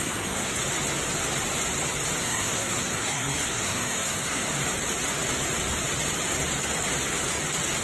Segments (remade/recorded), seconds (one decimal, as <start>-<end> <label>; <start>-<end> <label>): 0.0-0.5 remade; 0.5-2.2 recorded; 2.2-4.5 remade; 4.5-7.8 recorded